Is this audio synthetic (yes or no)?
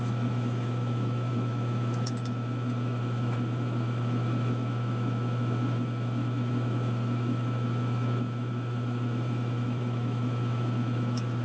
yes